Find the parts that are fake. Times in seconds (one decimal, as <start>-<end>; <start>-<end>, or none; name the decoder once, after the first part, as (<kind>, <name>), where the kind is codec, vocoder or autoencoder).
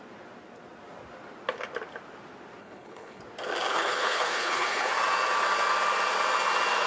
2.6-3.2 (codec, HILCodec); 3.7-4.9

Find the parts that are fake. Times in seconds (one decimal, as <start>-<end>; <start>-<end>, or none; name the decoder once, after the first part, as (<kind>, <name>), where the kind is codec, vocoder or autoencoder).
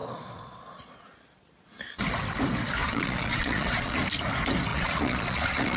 0.0-1.0 (vocoder, Vocos); 2.8-4.0; 4.7-5.8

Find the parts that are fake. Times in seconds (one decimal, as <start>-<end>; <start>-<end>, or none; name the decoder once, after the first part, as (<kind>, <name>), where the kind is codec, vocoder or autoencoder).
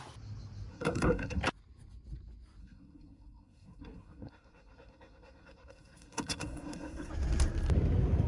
0.7-1.4 (codec, SNAC); 2.6-7.1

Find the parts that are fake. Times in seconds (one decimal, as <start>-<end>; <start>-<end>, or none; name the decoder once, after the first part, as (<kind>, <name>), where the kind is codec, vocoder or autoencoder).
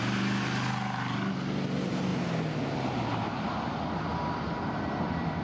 none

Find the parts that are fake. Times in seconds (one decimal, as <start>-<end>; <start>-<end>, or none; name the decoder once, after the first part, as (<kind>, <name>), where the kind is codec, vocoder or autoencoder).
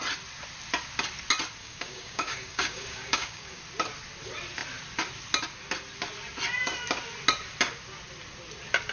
1.6-3.6 (codec, DAC)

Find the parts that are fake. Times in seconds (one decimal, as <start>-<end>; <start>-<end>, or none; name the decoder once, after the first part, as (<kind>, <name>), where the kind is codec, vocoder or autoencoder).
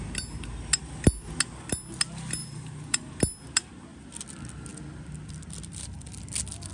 2.4-3.1 (vocoder, BigVGAN v2)